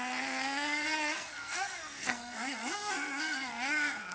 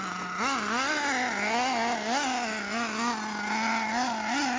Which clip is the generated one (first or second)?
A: first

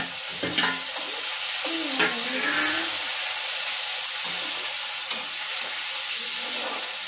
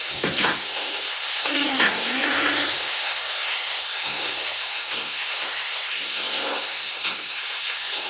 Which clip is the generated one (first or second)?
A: second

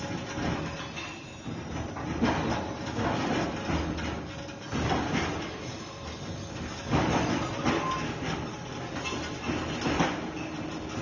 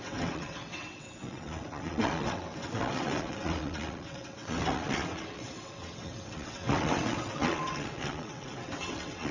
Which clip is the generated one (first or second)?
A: second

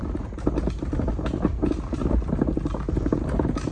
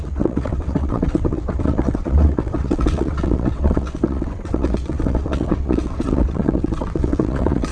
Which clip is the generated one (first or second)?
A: second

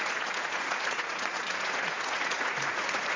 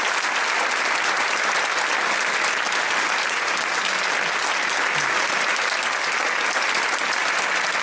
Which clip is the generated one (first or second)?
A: first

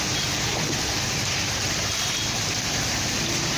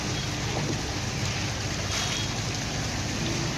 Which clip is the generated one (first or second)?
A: first